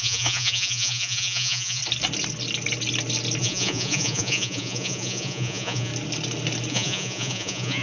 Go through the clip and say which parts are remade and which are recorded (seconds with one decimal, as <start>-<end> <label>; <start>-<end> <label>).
0.0-1.8 remade; 1.8-3.4 recorded; 3.4-5.9 remade; 5.9-6.7 recorded; 6.7-7.8 remade